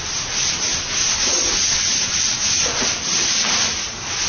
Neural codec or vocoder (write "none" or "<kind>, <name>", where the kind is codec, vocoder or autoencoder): none